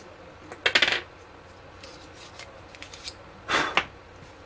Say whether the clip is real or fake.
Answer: real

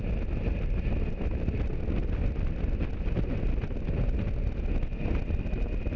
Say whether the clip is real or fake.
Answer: real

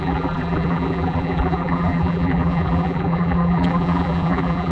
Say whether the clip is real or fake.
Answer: fake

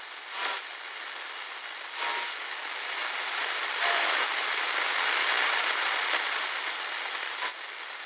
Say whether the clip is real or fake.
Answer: real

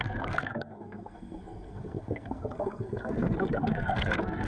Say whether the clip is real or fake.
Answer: fake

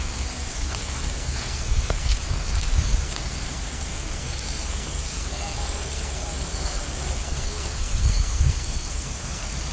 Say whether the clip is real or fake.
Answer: fake